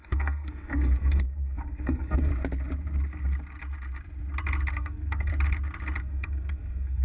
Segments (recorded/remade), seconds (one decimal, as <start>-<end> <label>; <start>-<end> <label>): 0.0-2.3 remade; 2.3-4.7 recorded; 4.7-5.3 remade; 5.3-6.0 recorded; 6.0-7.0 remade